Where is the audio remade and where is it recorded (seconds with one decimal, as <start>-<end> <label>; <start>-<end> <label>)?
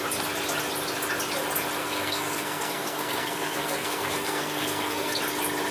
0.0-1.8 recorded; 1.8-5.2 remade; 5.2-5.7 recorded